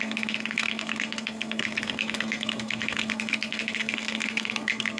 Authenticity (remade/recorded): remade